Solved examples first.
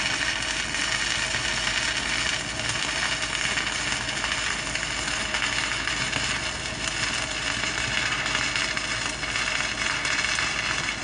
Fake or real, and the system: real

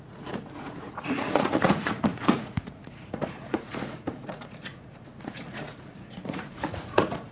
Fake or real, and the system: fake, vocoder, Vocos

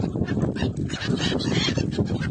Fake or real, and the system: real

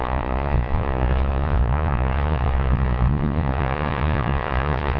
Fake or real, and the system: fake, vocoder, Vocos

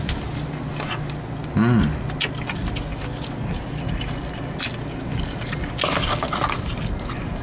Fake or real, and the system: real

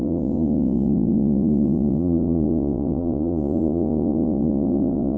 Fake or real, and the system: fake, vocoder, Vocos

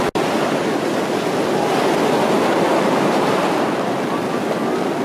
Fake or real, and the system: real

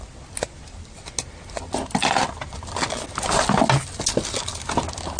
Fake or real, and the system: real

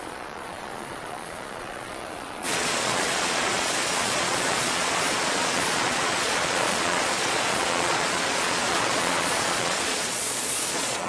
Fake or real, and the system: fake, vocoder, Vocos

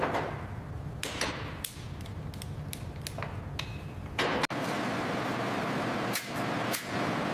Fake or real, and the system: real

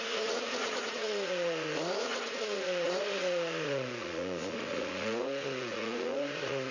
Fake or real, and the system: fake, vocoder, Vocos